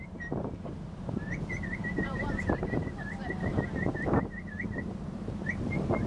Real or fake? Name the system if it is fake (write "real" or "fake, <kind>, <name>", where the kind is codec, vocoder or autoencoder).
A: fake, vocoder, BigVGAN v2